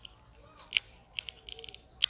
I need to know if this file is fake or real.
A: real